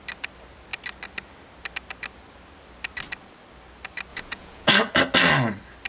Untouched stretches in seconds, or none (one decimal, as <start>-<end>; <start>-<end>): 0.0-4.1; 4.7-5.9